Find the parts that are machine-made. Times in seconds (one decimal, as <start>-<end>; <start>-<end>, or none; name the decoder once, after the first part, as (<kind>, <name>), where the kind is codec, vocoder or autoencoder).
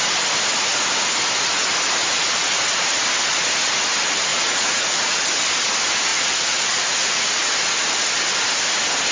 2.0-2.5 (vocoder, Vocos); 4.3-5.2; 6.1-7.5